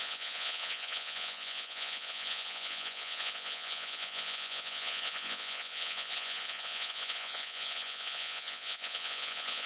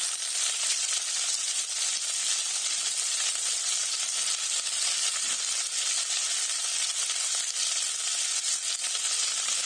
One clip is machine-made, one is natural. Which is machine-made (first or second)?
first